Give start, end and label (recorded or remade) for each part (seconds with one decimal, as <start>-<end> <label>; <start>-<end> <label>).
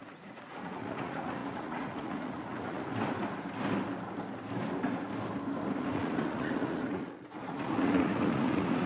0.0-2.9 remade; 2.9-5.8 recorded; 5.8-8.9 remade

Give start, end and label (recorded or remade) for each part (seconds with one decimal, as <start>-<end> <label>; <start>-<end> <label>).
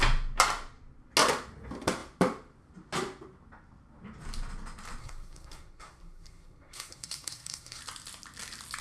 0.0-5.0 recorded; 5.0-7.8 remade; 7.8-8.8 recorded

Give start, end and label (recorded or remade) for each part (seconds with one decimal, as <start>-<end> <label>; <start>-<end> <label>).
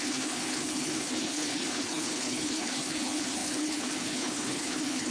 0.0-5.1 remade